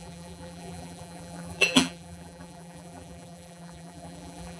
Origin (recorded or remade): remade